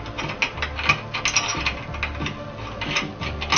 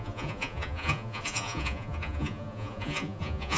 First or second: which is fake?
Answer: second